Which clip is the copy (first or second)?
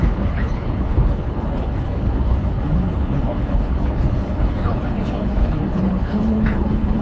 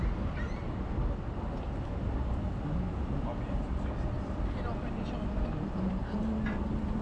first